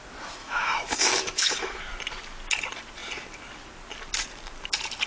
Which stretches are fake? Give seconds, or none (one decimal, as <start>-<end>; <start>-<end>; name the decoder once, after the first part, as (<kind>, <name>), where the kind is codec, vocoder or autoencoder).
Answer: 0.4-1.8 (autoencoder, DAC-VAE)